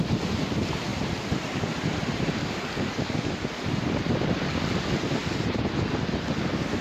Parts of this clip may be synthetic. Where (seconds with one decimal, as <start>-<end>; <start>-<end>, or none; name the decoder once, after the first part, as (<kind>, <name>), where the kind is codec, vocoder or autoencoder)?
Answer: 2.4-3.3 (codec, DAC)